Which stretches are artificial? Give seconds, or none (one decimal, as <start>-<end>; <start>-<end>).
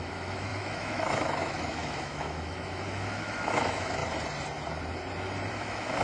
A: 0.0-4.0; 5.5-6.0